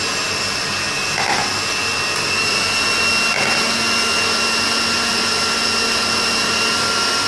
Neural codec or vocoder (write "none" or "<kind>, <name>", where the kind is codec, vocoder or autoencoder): none